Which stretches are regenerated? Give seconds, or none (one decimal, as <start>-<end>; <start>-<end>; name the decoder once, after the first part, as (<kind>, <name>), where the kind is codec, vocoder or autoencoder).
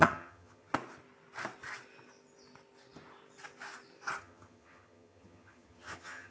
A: 0.0-0.7 (vocoder, HiFi-GAN); 4.2-6.3